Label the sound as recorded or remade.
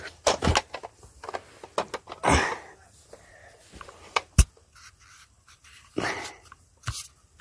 recorded